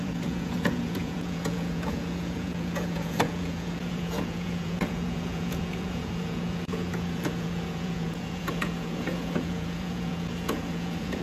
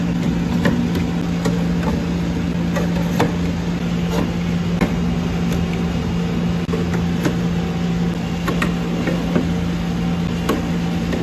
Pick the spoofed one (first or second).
first